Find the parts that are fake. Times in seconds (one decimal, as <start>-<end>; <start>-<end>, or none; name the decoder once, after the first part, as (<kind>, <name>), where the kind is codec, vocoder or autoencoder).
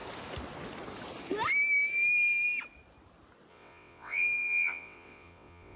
3.5-5.8 (vocoder, WaveNeXt)